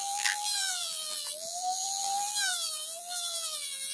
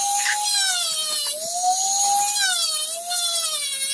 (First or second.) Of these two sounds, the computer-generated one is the first